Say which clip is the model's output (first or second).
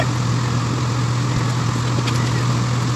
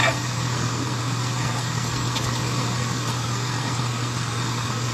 second